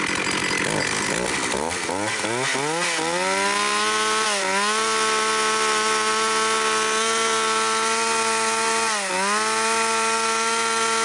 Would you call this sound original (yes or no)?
yes